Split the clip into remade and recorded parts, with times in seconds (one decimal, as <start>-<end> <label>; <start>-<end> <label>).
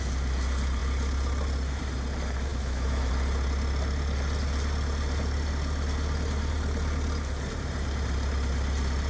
0.0-2.5 recorded; 2.5-3.1 remade; 3.1-9.1 recorded